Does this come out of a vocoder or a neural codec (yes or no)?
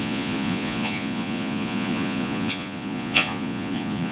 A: yes